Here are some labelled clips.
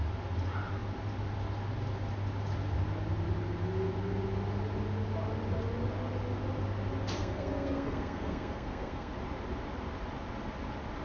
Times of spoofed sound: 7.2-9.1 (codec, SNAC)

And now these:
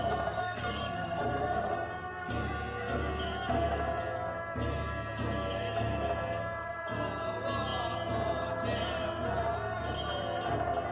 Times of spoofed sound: 0.4-1.7 (codec, SNAC)

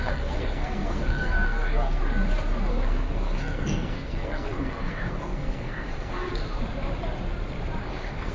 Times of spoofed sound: 0.0-2.0 (codec, SNAC); 2.7-6.3; 7.8-8.3

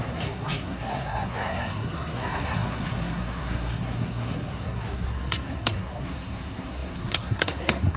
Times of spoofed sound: 0.0-8.0 (codec, SNAC)

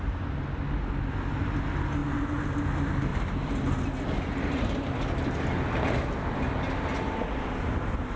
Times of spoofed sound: none

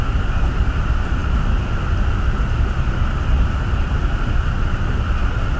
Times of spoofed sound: none